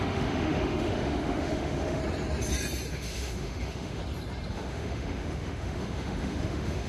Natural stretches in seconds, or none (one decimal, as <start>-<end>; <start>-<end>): 2.0-2.9; 4.0-4.5